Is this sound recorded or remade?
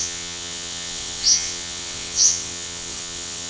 remade